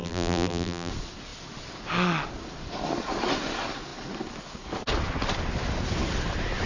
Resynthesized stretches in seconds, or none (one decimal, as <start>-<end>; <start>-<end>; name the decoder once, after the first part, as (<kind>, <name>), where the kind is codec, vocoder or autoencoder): 0.0-0.9 (vocoder, BigVGAN v2)

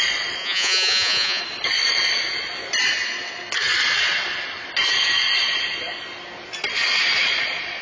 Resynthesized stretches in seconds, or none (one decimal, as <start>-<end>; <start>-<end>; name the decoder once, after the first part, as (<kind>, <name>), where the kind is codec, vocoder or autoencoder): 0.4-1.4 (vocoder, Vocos)

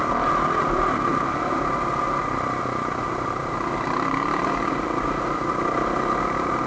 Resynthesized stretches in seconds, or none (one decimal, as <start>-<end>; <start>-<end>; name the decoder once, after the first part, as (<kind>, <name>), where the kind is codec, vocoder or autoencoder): none

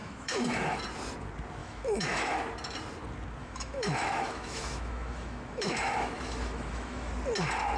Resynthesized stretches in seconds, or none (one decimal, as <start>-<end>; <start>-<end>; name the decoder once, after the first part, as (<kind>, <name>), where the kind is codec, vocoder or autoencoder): 0.0-0.8 (autoencoder, DAC-VAE); 1.6-2.4; 3.4-7.1

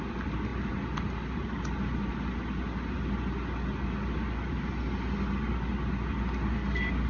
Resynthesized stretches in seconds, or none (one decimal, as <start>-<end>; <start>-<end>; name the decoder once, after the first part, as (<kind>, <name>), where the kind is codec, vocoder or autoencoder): none

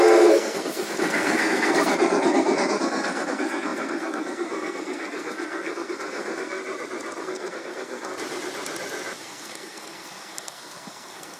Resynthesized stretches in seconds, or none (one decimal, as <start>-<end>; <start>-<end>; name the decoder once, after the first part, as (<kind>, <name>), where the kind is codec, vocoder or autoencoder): 0.0-6.6 (codec, SNAC); 7.2-8.1; 9.2-11.4